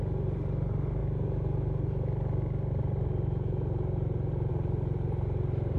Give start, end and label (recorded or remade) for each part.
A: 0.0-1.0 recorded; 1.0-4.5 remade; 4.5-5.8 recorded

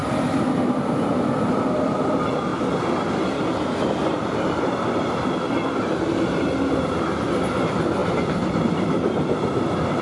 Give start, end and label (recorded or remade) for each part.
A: 0.0-0.7 recorded; 0.7-2.5 remade; 2.5-4.1 recorded; 4.1-8.0 remade; 8.0-8.6 recorded; 8.6-10.0 remade

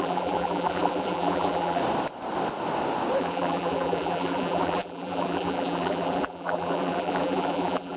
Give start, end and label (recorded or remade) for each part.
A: 0.0-1.8 remade; 1.8-3.2 recorded; 3.2-8.0 remade

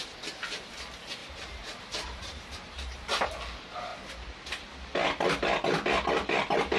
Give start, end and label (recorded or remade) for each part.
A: 0.0-1.2 recorded; 1.2-3.3 remade; 3.3-6.8 recorded

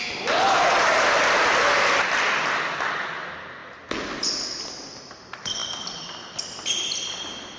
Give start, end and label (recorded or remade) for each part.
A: 0.0-7.6 recorded